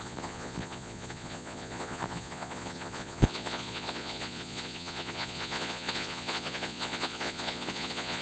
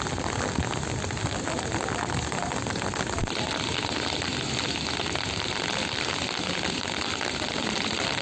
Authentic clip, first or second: second